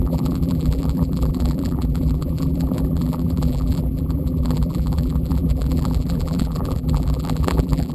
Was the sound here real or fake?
fake